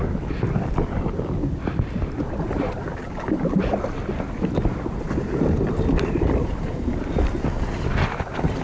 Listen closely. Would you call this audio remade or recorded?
recorded